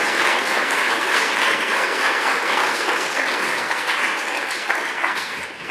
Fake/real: fake